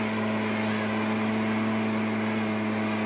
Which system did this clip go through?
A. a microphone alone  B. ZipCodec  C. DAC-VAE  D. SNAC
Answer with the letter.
A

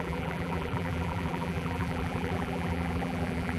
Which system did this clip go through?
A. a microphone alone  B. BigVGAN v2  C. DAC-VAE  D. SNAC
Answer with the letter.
B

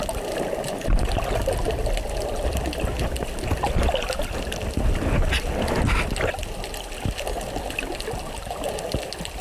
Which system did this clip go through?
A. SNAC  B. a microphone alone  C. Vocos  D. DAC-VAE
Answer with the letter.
B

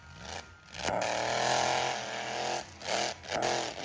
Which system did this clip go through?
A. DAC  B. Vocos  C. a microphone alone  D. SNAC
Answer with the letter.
C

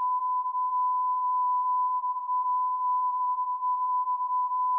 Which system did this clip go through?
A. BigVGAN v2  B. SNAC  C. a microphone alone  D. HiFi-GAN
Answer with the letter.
A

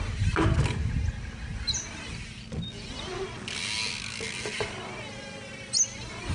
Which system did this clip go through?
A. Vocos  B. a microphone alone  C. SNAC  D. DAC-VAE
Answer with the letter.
B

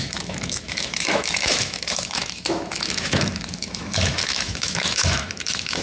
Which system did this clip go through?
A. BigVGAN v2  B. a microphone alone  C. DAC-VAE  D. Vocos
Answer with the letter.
C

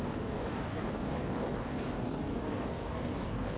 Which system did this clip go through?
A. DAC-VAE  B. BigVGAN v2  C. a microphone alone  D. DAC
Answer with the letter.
D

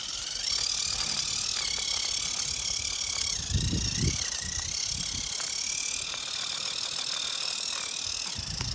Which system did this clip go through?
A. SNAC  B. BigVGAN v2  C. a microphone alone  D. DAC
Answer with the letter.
C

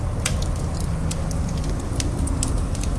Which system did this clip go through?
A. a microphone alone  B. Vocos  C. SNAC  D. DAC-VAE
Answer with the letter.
A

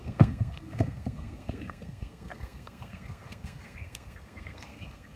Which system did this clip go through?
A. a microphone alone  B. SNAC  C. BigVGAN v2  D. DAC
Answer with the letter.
B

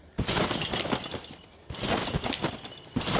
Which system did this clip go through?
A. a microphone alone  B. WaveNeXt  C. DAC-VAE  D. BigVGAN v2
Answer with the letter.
A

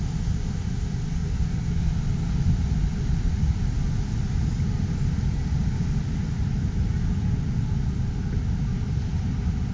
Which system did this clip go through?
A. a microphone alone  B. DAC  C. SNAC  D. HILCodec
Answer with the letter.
A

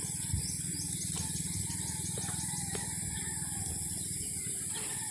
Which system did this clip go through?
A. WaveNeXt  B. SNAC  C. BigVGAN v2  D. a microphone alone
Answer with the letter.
D